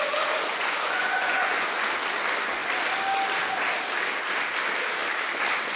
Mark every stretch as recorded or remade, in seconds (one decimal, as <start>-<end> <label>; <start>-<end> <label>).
0.0-0.5 recorded; 0.5-1.9 remade; 1.9-5.8 recorded